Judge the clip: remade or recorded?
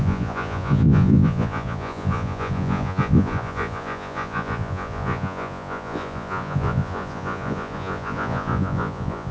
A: remade